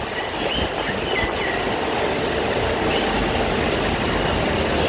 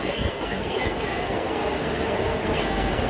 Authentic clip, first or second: first